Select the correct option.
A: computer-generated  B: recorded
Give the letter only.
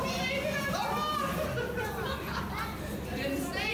B